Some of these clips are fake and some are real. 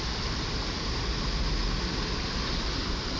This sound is real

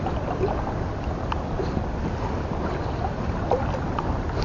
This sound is real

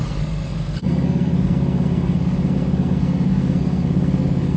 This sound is fake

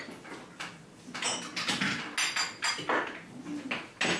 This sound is real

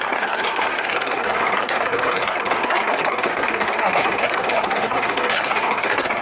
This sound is fake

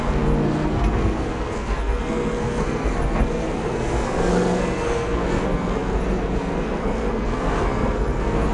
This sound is fake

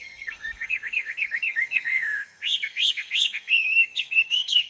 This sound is fake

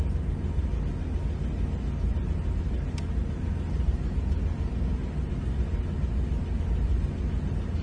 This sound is real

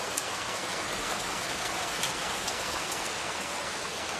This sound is fake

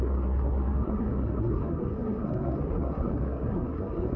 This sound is fake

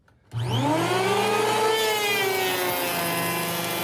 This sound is real